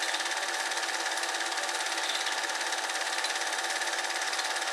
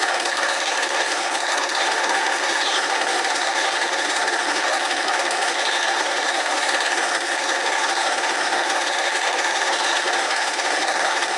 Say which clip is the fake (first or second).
second